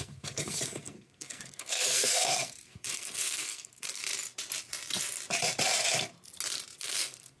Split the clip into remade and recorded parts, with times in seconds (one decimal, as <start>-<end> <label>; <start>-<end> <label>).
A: 0.0-4.0 remade; 4.0-6.8 recorded; 6.8-7.4 remade